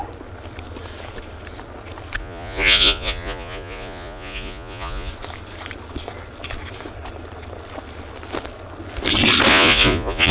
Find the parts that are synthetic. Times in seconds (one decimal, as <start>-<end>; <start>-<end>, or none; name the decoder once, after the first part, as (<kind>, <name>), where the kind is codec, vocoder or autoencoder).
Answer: 2.2-5.1 (vocoder, Vocos); 9.5-10.3